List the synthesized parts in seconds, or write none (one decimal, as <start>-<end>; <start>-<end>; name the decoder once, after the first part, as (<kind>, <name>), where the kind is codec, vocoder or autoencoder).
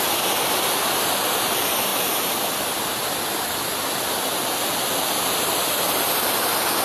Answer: none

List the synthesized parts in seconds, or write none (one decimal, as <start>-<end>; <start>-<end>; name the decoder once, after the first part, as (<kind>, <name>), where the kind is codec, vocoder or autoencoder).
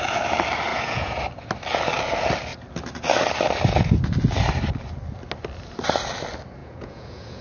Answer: 0.7-1.2 (vocoder, Vocos); 6.6-7.4